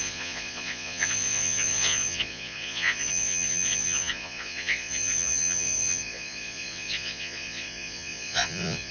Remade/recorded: remade